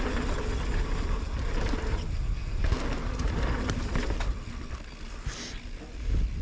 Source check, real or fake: real